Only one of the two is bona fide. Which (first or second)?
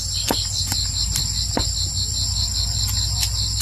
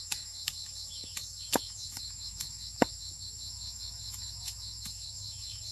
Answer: first